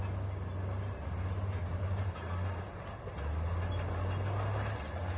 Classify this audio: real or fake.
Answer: real